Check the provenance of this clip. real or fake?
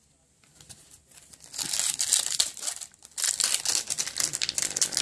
real